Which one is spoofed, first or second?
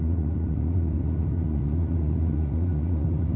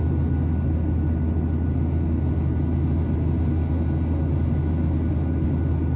first